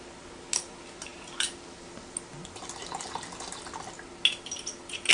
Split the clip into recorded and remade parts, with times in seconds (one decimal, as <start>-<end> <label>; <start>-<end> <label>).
0.0-5.1 recorded

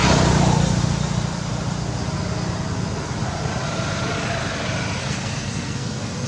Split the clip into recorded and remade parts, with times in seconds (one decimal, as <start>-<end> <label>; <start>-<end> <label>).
0.0-5.0 recorded; 5.0-6.3 remade

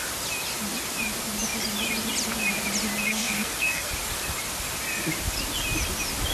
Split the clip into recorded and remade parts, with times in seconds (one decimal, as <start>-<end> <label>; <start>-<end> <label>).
0.0-3.1 recorded; 3.1-3.9 remade; 3.9-6.3 recorded

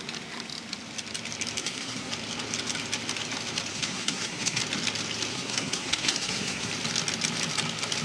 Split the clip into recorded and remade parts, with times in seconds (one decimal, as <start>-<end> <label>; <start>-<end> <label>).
0.0-1.6 recorded; 1.6-2.1 remade; 2.1-3.7 recorded; 3.7-4.6 remade; 4.6-5.3 recorded; 5.3-6.7 remade; 6.7-8.0 recorded

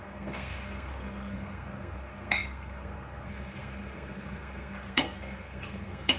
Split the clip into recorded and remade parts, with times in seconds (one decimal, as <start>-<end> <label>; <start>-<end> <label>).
0.0-6.2 remade